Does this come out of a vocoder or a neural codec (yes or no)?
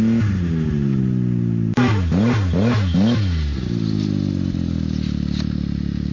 no